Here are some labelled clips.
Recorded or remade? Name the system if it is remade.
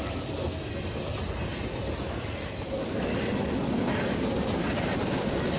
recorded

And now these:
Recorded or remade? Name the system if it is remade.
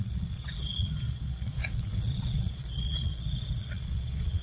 remade, vocoder, Vocos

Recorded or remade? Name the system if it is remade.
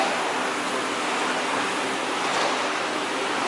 recorded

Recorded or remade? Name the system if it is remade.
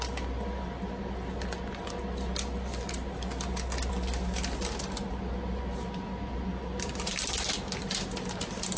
recorded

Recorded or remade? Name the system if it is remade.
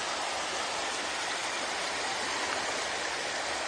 recorded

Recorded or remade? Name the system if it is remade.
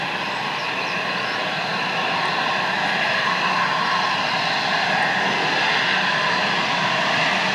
recorded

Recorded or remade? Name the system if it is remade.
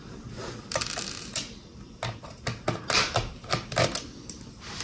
recorded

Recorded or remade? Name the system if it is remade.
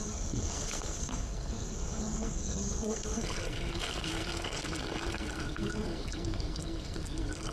remade, codec, SNAC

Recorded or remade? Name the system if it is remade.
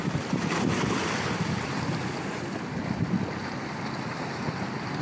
recorded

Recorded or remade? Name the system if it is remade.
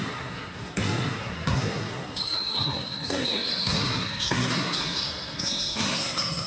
remade, codec, SNAC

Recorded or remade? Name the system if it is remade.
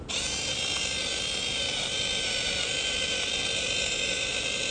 recorded